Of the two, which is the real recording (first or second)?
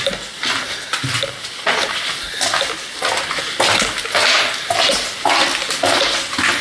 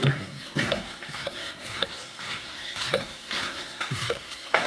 first